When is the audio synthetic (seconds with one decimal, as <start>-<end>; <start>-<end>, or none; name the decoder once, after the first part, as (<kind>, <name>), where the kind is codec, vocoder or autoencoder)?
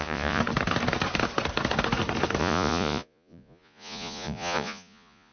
0.0-0.4 (vocoder, Vocos); 2.4-5.3